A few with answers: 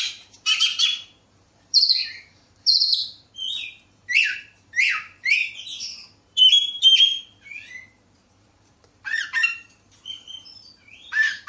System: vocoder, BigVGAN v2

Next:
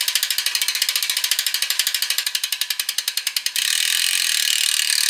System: none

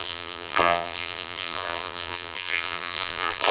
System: vocoder, BigVGAN v2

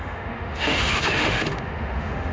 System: autoencoder, DAC-VAE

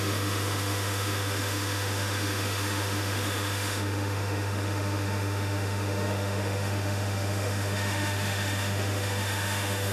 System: autoencoder, DAC-VAE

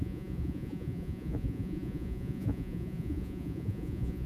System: vocoder, Vocos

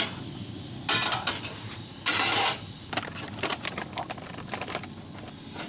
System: none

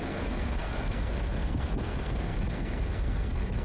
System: codec, SNAC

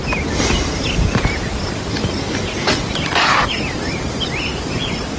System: none